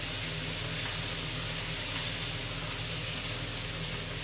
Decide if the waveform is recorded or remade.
recorded